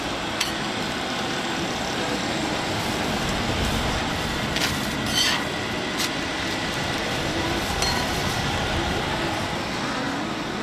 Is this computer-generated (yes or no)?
no